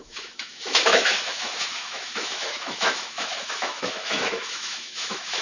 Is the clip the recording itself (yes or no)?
no